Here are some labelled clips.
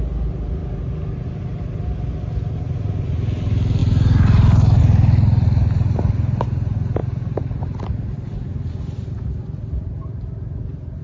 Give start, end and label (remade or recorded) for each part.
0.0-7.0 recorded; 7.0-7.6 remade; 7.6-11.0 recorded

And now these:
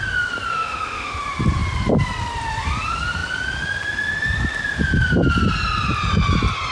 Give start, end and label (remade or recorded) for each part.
0.0-0.5 recorded; 0.5-1.2 remade; 1.2-6.7 recorded